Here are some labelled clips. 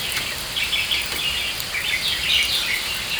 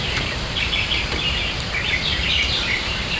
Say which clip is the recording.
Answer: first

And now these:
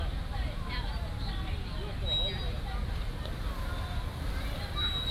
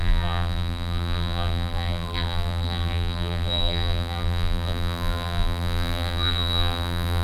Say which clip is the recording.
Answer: first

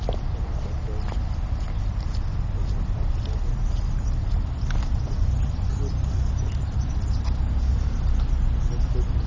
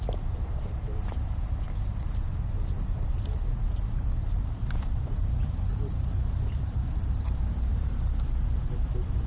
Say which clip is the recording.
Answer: first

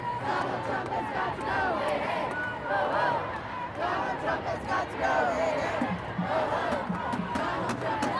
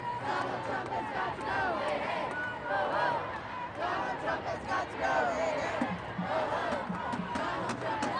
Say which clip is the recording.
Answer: second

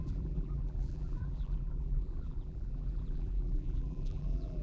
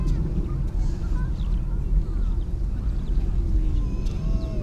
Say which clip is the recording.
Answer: second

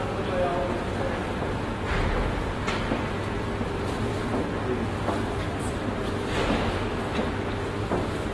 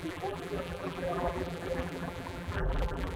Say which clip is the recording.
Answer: first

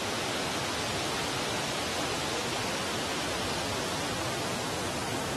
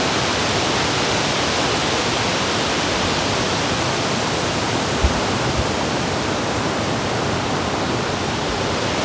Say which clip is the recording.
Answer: first